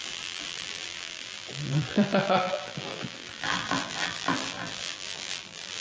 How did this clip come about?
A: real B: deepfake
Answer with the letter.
B